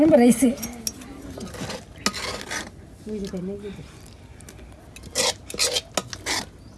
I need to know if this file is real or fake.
real